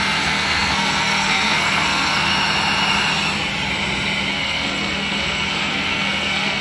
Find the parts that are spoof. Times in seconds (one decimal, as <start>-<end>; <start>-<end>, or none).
0.0-2.3; 4.3-6.6

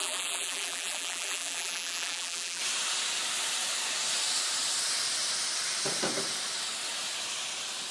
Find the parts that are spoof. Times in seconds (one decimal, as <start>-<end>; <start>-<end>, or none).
0.0-2.6

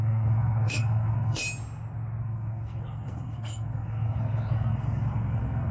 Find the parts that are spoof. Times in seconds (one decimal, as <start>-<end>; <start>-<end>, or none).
0.0-1.4; 2.2-5.7